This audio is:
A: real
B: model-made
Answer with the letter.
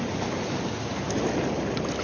A